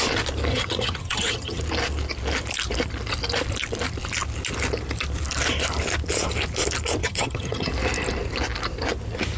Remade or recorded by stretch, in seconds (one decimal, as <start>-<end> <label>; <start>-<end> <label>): 0.0-0.5 recorded; 0.5-1.6 remade; 1.6-7.0 recorded; 7.0-7.7 remade; 7.7-9.4 recorded